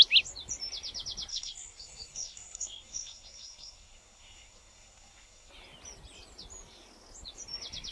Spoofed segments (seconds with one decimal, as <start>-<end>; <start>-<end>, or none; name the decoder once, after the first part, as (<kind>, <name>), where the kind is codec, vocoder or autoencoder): 1.3-5.5 (codec, SNAC)